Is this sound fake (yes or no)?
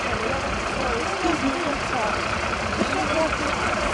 yes